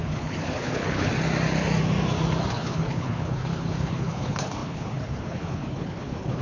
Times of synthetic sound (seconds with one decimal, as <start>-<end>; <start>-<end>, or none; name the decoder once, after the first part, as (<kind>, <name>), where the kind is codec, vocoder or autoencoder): 0.0-1.1 (codec, HILCodec); 2.5-6.4